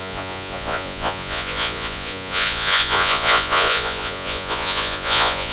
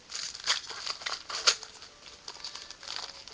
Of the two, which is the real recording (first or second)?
second